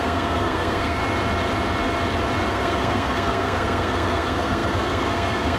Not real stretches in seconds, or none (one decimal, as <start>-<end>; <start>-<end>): 0.0-1.0; 2.5-5.6